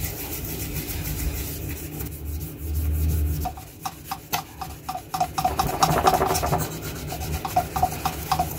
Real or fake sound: real